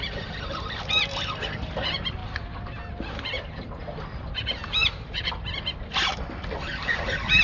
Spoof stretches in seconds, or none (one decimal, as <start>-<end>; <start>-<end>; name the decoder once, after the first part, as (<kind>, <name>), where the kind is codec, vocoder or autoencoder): none